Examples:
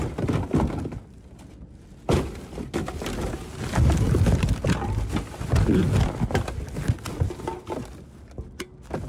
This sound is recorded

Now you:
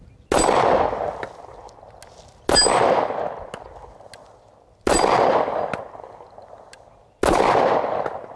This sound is recorded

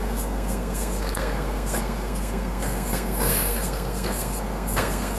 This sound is remade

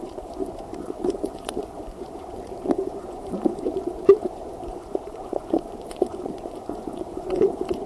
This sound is remade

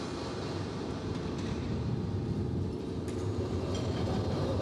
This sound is remade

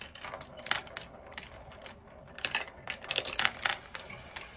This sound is recorded